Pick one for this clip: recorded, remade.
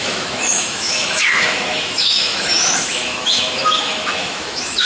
remade